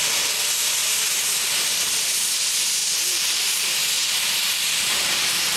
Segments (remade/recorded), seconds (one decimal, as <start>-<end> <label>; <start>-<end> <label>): 0.0-0.8 remade; 0.8-1.4 recorded; 1.4-5.6 remade